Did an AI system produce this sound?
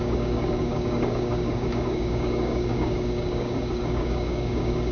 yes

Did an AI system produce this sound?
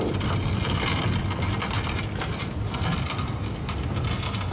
no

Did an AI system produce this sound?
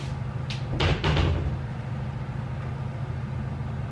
no